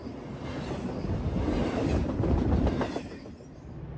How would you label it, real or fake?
real